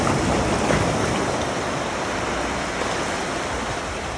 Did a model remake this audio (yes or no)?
no